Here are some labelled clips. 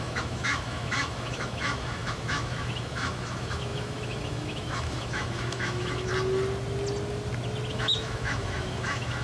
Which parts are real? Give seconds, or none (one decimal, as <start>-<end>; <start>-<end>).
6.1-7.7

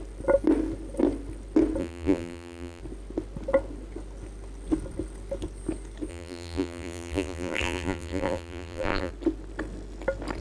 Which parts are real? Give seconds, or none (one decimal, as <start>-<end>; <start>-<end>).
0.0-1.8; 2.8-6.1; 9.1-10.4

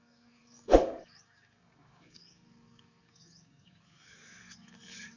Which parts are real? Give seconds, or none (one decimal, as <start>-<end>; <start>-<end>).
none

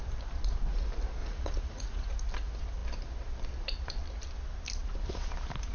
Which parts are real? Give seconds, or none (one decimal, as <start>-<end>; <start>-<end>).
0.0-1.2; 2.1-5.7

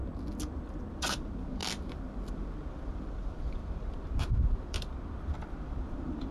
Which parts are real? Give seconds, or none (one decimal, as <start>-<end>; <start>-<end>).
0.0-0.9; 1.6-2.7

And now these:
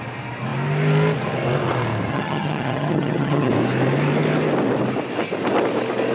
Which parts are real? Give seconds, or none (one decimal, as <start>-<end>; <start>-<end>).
0.0-2.1; 3.5-6.1

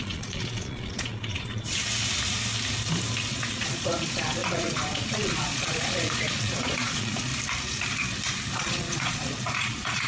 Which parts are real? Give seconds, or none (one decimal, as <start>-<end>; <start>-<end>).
1.8-3.3; 7.3-8.5